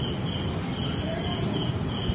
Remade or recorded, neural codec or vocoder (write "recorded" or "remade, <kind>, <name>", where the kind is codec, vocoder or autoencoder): recorded